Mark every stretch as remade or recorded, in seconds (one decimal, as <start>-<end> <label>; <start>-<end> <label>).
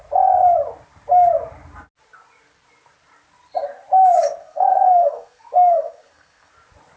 0.0-4.4 recorded; 4.4-6.5 remade; 6.5-7.0 recorded